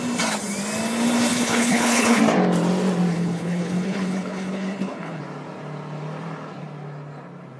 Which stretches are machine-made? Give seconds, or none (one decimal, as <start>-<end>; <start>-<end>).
1.3-2.2; 3.1-5.2